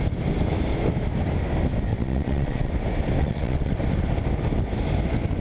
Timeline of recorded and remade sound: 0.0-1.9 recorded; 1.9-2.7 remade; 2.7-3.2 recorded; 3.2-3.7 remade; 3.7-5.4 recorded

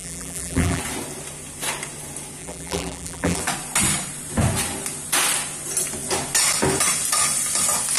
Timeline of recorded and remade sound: 0.0-0.8 remade; 0.8-2.4 recorded; 2.4-3.4 remade; 3.4-8.0 recorded